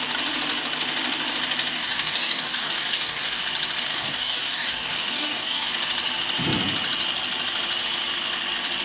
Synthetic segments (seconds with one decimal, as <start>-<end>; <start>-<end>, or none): 1.7-3.4; 3.9-5.7